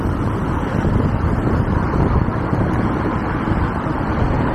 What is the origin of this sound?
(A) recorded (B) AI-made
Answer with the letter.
B